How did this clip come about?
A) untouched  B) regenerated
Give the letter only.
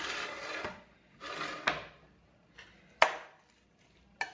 A